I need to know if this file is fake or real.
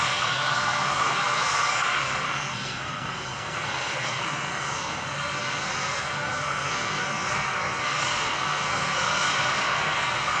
fake